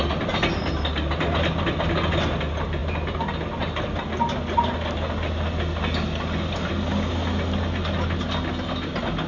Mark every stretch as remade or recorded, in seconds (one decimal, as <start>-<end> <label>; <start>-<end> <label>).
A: 0.0-9.3 recorded